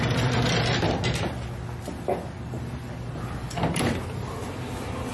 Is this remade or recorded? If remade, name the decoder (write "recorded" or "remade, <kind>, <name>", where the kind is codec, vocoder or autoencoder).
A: remade, vocoder, BigVGAN v2